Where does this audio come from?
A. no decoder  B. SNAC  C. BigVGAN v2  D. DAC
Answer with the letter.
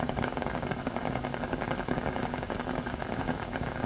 D